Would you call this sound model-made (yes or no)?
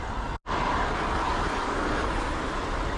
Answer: no